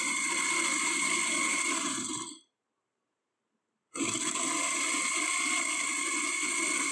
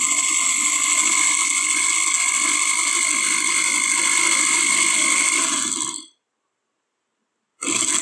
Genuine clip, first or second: second